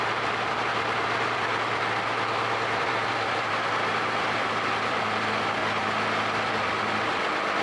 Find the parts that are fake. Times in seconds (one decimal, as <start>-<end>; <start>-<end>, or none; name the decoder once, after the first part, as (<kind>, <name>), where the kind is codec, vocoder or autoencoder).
0.0-5.6 (vocoder, BigVGAN v2); 6.8-7.6